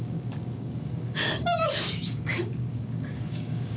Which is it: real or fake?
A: fake